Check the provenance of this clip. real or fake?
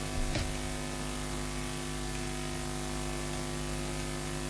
real